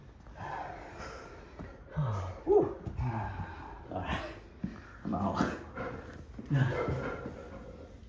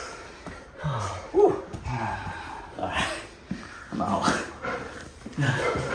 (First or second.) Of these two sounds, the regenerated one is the second